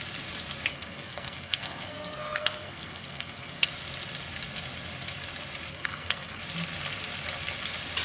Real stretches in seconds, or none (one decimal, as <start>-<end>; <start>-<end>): 0.0-0.7; 3.7-5.7; 6.4-8.0